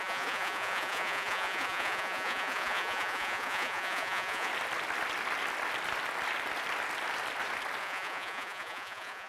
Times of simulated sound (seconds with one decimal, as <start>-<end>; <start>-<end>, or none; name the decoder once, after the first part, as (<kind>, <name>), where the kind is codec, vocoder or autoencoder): 0.0-4.5 (vocoder, Vocos); 7.8-9.3